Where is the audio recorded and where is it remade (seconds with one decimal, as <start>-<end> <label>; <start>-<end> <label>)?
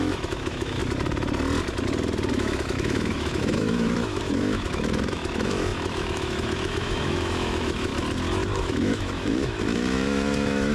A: 0.0-0.8 remade; 0.8-2.3 recorded; 2.3-7.9 remade; 7.9-8.6 recorded; 8.6-10.7 remade